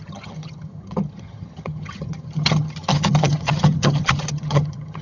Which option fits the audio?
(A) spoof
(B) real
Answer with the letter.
A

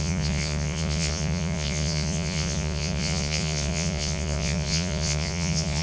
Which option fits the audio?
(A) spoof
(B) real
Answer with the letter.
A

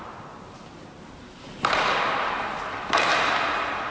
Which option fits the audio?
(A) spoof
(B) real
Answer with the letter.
A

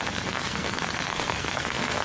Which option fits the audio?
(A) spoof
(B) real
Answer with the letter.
A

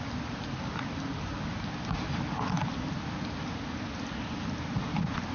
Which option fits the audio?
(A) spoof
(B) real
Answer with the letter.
B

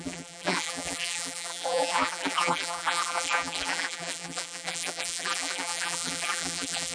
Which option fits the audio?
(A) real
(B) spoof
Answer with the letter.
B